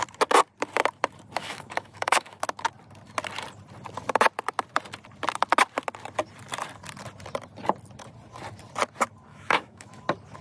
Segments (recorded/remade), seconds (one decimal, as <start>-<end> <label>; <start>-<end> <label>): 0.0-1.4 recorded; 1.4-2.4 remade; 2.4-9.3 recorded; 9.3-10.0 remade; 10.0-10.4 recorded